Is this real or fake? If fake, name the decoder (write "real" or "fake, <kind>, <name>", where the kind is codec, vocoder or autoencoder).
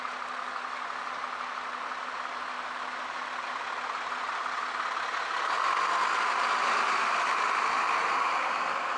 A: real